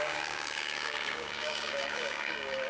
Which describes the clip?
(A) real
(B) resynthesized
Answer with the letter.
B